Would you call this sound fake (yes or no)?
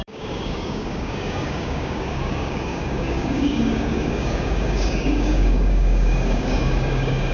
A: yes